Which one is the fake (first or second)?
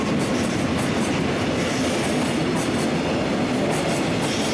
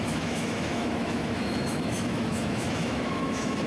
second